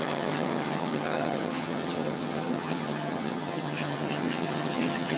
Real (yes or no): no